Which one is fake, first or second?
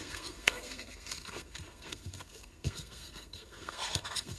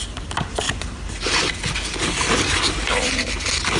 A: first